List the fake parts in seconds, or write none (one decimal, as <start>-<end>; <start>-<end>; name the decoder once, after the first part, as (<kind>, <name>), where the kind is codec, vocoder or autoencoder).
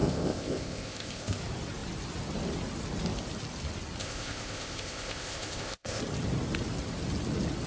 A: 0.0-1.4 (codec, ZipCodec); 4.0-6.0